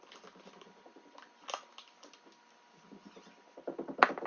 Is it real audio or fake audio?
real